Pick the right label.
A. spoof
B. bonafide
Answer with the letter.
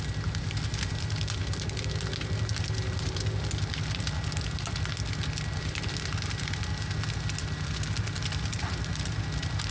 B